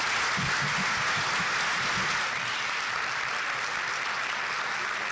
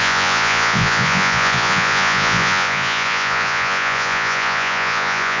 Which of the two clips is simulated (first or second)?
second